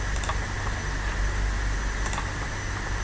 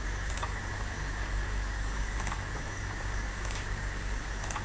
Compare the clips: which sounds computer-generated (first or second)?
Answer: second